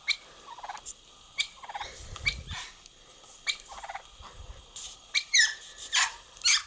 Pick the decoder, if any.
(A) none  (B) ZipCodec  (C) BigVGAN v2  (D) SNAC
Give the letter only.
A